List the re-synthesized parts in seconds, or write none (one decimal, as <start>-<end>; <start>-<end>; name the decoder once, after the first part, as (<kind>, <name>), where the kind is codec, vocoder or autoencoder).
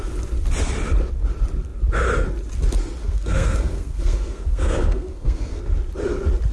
3.0-5.6 (codec, SNAC)